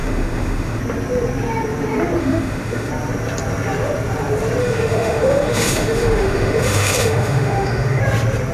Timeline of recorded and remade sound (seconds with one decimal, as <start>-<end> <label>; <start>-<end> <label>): 0.0-0.8 remade; 0.8-2.2 recorded; 2.2-2.9 remade; 2.9-4.6 recorded; 4.6-8.0 remade; 8.0-8.5 recorded